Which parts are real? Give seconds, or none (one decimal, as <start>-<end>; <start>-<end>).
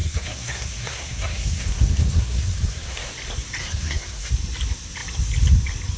3.1-3.6; 4.3-6.0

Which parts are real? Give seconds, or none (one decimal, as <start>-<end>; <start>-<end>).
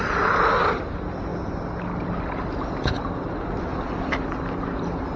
0.0-5.2